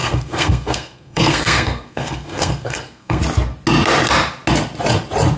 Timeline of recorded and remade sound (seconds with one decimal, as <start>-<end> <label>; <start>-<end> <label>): 0.0-3.2 remade; 3.2-5.4 recorded